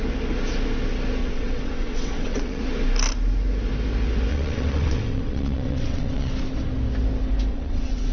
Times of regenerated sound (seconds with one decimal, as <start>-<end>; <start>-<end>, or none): 1.2-2.6; 4.3-6.3; 7.5-8.1